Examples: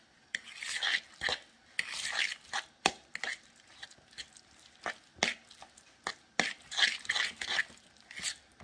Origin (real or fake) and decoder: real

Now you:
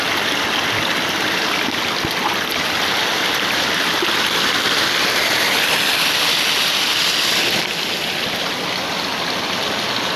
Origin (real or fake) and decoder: real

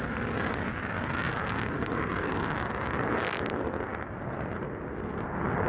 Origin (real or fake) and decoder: real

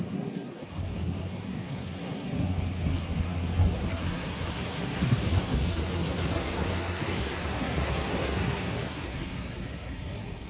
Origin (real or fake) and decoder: fake, codec, SNAC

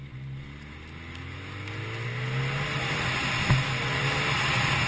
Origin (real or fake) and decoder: real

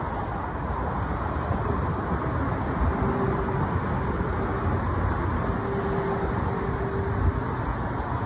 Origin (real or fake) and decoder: real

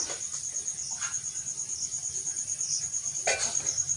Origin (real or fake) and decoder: real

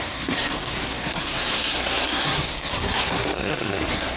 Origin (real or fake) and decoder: fake, codec, SNAC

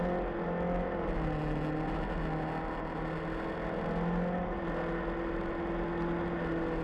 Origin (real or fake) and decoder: real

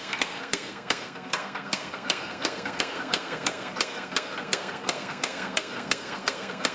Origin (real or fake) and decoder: fake, codec, SNAC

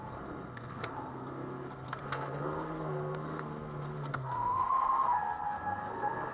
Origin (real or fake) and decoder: fake, codec, SNAC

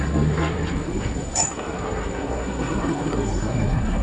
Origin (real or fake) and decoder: fake, codec, SNAC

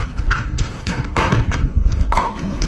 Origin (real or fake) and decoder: fake, codec, SNAC